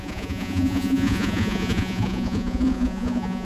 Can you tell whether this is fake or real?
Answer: fake